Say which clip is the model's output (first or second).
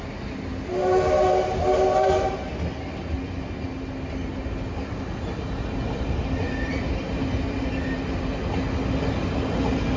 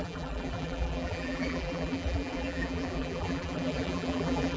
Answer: second